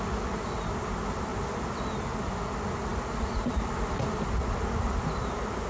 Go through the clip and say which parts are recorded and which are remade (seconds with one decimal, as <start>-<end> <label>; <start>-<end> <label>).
0.0-5.7 recorded